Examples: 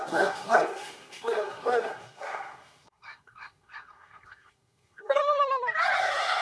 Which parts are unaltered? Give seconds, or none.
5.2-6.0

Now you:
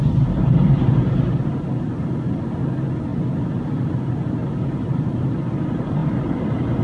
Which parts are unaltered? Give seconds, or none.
0.0-6.8

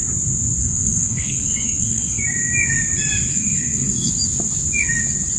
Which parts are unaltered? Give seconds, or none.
0.0-0.6; 2.2-3.3; 4.1-5.4